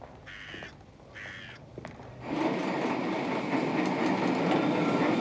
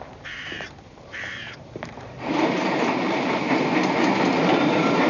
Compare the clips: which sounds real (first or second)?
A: first